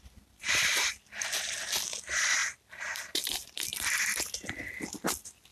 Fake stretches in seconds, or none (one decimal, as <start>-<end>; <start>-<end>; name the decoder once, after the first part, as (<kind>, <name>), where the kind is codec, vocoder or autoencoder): none